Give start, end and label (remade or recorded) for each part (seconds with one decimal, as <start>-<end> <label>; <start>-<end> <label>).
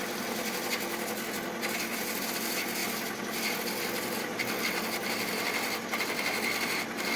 0.0-7.2 recorded